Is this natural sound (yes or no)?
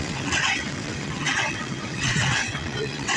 no